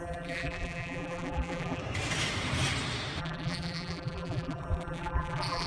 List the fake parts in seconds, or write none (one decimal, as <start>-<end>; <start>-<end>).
0.0-1.8; 3.2-5.7